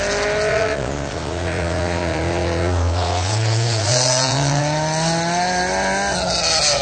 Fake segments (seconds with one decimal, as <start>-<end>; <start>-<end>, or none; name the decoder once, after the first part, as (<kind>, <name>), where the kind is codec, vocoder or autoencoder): 0.5-4.6 (vocoder, Vocos)